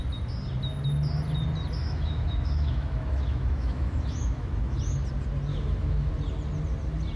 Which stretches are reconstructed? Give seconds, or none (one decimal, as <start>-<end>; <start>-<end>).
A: 1.8-4.8; 5.5-6.1